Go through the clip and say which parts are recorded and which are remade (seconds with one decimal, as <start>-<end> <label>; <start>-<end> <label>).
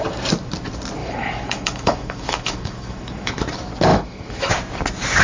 0.0-1.0 recorded; 1.0-3.4 remade; 3.4-3.9 recorded; 3.9-4.5 remade; 4.5-5.2 recorded